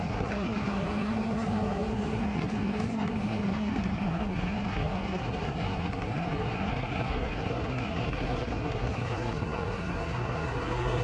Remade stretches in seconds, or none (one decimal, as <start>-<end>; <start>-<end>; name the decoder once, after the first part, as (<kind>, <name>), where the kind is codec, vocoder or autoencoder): 0.0-11.0 (codec, SNAC)